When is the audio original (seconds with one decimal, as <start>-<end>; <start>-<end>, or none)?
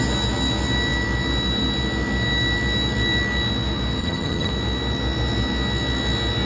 0.0-4.0; 4.5-6.5